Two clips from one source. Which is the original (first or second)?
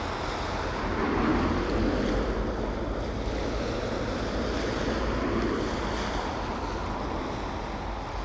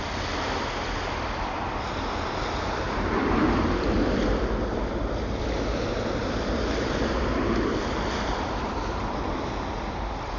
first